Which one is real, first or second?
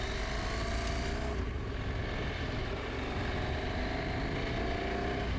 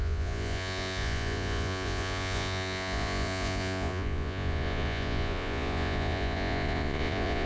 first